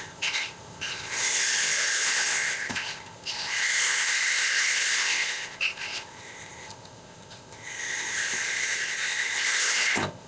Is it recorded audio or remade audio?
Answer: remade